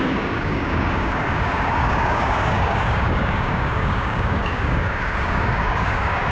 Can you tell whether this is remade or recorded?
remade